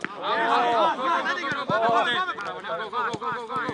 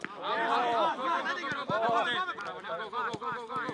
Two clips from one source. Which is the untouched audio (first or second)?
first